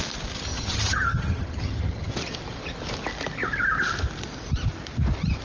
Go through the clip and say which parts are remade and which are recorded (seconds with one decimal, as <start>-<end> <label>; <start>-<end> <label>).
0.0-0.5 recorded; 0.5-2.1 remade; 2.1-5.4 recorded

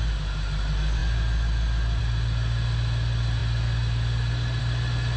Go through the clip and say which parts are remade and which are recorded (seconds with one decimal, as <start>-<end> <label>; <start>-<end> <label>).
0.0-5.2 recorded

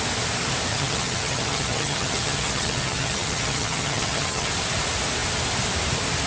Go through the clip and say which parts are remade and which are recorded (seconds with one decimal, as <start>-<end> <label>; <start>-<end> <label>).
0.0-0.7 recorded; 0.7-4.5 remade; 4.5-6.3 recorded

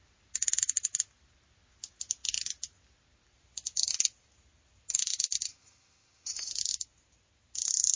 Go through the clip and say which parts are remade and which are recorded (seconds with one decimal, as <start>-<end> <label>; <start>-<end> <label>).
0.0-5.5 recorded; 5.5-6.5 remade; 6.5-8.0 recorded